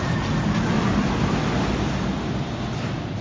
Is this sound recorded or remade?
recorded